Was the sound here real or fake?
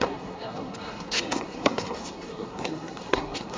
fake